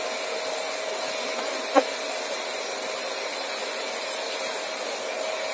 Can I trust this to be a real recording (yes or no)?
yes